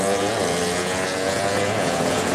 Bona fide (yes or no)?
no